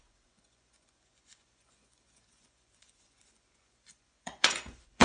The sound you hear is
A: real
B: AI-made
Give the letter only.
B